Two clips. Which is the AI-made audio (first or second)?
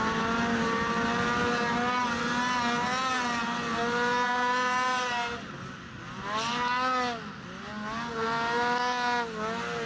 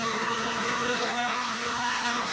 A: second